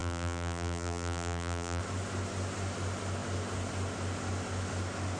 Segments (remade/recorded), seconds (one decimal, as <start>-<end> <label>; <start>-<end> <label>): 0.0-1.8 remade; 1.8-5.2 recorded